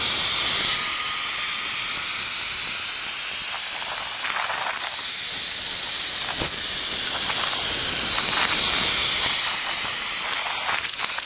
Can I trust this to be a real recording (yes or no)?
yes